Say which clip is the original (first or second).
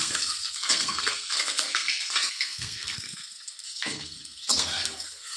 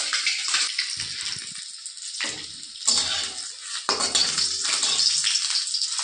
second